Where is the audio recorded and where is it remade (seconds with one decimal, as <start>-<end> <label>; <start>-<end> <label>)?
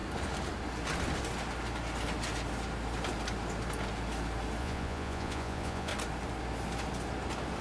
0.0-4.6 recorded; 4.6-5.9 remade; 5.9-7.6 recorded